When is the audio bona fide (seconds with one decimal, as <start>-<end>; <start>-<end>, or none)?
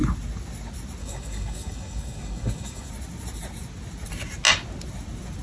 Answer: 0.0-1.0; 2.9-5.4